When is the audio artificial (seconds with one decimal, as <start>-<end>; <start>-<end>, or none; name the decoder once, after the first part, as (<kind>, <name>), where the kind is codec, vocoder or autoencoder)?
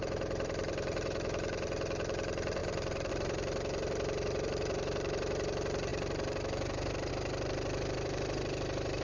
0.0-9.0 (vocoder, BigVGAN v2)